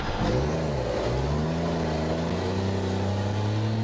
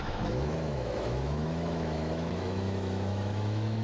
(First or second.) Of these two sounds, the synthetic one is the second